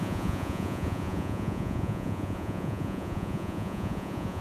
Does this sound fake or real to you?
fake